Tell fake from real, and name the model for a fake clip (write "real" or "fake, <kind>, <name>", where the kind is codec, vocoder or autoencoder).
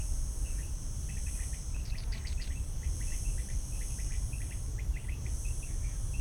fake, vocoder, BigVGAN v2